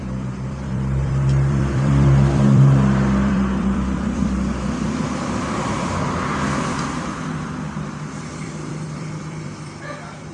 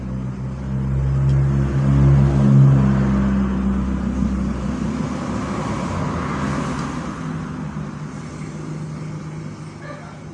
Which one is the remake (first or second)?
first